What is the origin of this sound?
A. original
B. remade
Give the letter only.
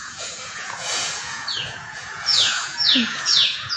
B